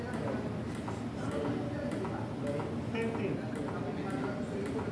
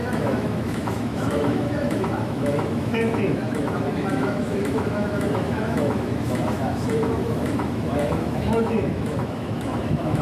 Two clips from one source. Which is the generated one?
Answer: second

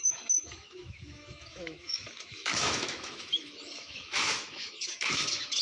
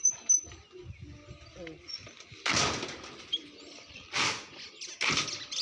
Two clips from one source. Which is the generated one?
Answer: first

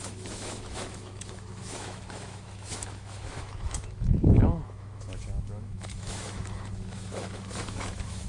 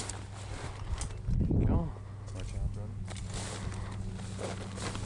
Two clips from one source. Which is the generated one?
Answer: first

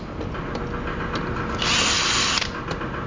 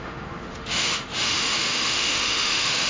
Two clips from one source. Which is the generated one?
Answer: second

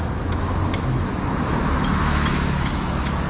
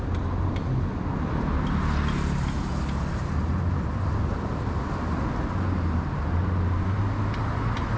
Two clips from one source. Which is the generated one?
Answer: first